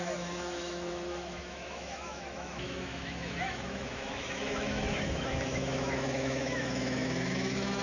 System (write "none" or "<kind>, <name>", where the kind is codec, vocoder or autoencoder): autoencoder, DAC-VAE